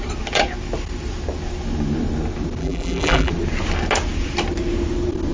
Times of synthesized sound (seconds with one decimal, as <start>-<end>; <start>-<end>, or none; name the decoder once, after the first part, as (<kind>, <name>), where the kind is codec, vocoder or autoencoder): 2.6-3.3 (vocoder, BigVGAN v2)